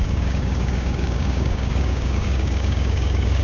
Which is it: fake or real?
fake